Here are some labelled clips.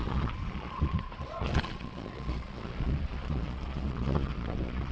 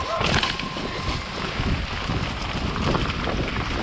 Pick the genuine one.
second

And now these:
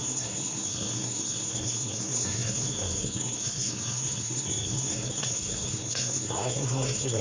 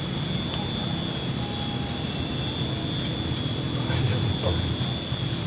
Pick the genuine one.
second